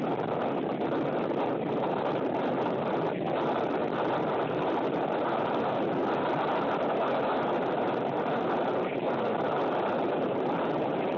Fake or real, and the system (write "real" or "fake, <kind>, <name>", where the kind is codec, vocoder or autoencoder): real